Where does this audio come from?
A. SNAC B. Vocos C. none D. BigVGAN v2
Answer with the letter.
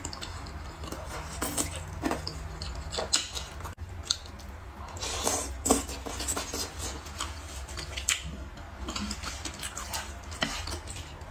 C